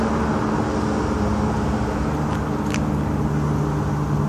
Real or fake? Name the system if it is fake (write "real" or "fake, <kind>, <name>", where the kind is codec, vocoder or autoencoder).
real